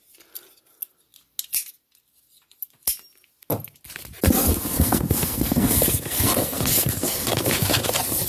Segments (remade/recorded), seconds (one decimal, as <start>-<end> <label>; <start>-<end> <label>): 0.0-4.4 recorded; 4.4-7.8 remade; 7.8-8.3 recorded